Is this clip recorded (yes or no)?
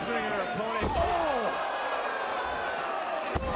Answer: yes